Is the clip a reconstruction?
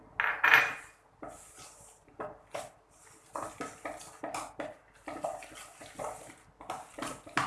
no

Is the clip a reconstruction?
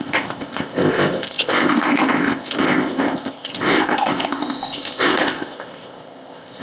yes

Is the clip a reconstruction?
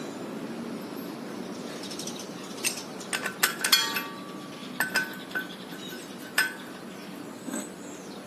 no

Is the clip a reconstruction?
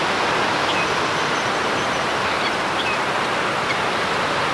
no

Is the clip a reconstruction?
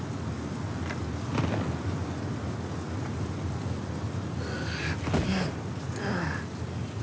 no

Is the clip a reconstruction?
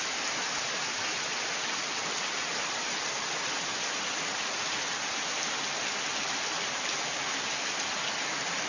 no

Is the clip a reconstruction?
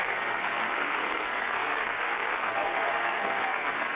yes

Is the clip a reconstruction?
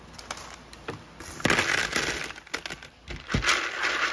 no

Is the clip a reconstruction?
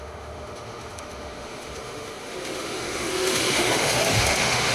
yes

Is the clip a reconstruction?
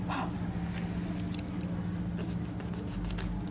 no